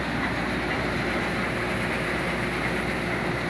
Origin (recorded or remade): recorded